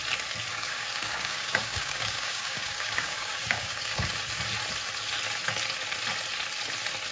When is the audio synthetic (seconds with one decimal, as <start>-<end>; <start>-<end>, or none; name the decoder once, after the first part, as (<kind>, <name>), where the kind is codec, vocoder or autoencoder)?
0.5-4.1 (codec, DAC)